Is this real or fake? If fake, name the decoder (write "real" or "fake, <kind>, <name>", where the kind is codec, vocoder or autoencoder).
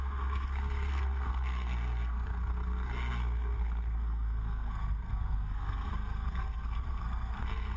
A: fake, codec, SNAC